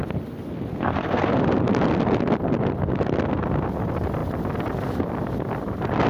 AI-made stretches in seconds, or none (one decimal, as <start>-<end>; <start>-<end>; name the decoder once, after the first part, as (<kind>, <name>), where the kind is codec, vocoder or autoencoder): 0.7-1.3 (codec, SNAC)

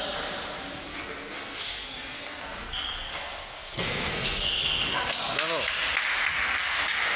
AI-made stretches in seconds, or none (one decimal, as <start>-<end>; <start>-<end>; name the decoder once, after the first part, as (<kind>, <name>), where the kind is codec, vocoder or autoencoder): 0.9-5.2 (codec, SNAC); 6.3-7.2

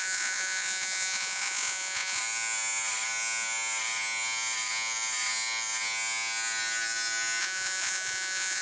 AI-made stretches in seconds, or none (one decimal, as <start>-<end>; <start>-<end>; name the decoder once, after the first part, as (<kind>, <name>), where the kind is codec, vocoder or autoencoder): 0.0-2.2 (vocoder, Vocos); 7.4-8.6

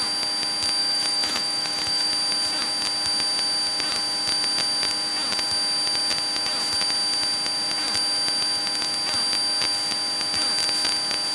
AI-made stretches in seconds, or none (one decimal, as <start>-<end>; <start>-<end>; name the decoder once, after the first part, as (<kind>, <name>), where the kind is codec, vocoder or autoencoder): 0.8-2.1 (autoencoder, DAC-VAE)

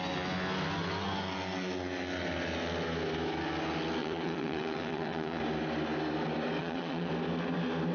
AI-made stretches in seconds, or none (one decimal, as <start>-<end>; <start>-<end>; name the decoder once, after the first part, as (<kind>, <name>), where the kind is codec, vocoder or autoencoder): 4.0-5.4 (vocoder, WaveNeXt); 6.6-7.1

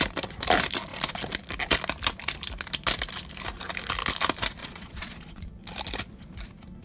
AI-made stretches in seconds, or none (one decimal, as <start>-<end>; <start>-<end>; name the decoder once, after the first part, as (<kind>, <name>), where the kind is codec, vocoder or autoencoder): 4.6-5.5 (vocoder, Vocos)